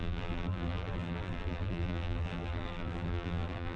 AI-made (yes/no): yes